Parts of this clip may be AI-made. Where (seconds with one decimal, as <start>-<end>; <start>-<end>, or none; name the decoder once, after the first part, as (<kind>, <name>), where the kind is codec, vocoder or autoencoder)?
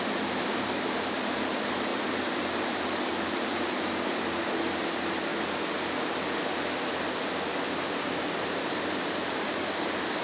0.0-5.3 (vocoder, BigVGAN v2); 8.4-10.2